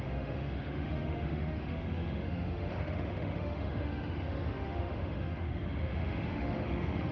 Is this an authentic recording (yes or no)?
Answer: no